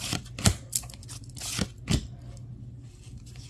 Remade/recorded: recorded